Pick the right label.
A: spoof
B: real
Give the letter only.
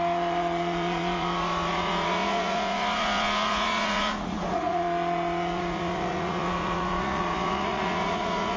A